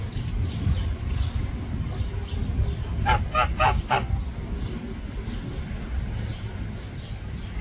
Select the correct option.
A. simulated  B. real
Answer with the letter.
B